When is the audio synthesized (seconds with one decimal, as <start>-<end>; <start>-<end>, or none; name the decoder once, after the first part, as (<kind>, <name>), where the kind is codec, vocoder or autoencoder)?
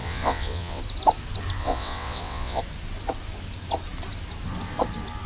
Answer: 0.0-0.8 (vocoder, WaveNeXt); 1.6-2.6